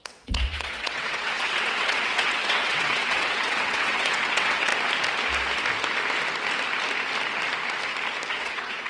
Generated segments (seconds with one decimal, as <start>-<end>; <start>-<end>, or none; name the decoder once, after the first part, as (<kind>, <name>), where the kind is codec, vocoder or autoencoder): 0.0-4.7 (vocoder, WaveNeXt); 8.3-8.9